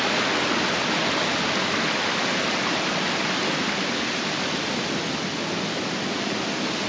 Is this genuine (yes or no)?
yes